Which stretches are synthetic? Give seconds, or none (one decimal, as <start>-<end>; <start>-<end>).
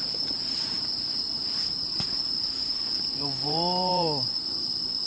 0.0-2.7; 3.2-5.1